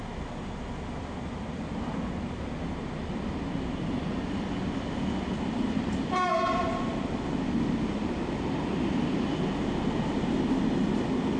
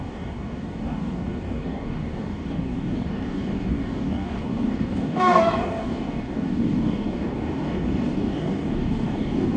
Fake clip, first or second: second